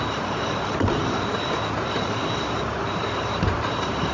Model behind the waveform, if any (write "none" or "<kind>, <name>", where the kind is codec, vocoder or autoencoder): vocoder, BigVGAN v2